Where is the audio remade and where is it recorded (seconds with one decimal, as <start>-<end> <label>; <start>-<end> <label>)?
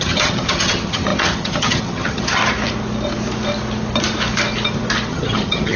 0.0-2.4 remade; 2.4-5.1 recorded; 5.1-5.8 remade